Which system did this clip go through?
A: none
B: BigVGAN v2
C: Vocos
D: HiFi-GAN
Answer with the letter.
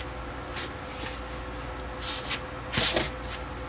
A